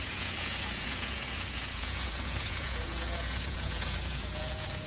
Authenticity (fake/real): fake